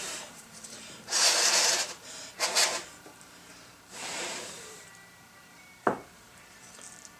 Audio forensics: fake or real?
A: fake